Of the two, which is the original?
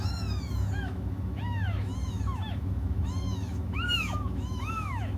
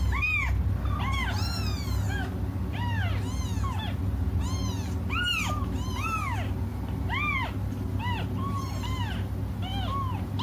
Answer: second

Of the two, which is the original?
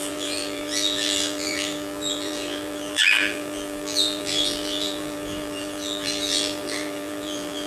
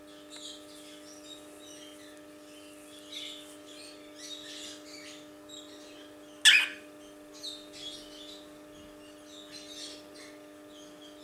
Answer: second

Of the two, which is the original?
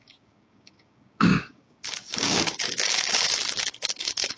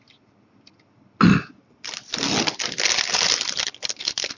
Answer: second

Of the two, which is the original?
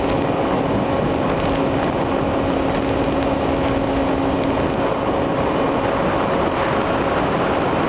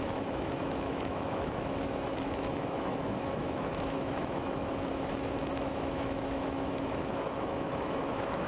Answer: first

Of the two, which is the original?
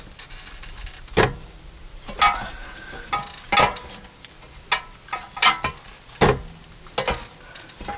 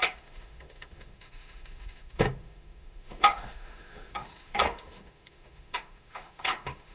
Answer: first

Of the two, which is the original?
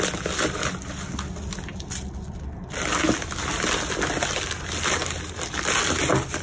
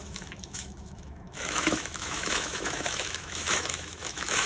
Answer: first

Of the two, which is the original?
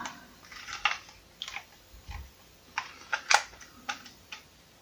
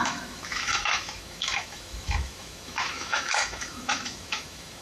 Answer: first